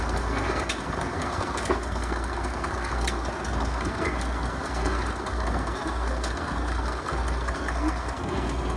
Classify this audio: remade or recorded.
remade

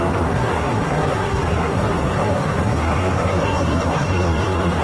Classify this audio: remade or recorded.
remade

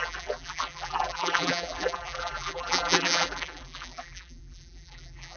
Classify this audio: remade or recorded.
remade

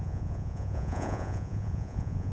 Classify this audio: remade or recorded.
remade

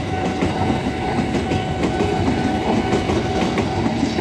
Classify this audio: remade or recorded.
recorded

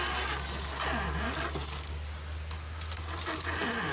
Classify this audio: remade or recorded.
recorded